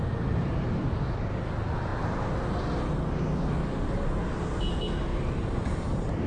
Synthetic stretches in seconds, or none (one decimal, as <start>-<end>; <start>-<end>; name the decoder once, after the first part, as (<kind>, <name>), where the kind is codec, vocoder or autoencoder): 5.1-6.3 (vocoder, BigVGAN v2)